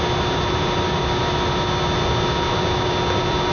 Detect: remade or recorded recorded